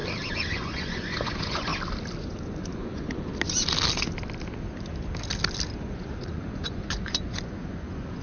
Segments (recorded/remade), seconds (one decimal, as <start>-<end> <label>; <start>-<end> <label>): 0.0-0.5 recorded; 0.5-1.7 remade; 1.7-2.2 recorded; 2.2-3.3 remade; 3.3-5.8 recorded; 5.8-8.2 remade